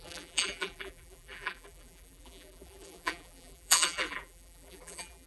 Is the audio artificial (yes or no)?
yes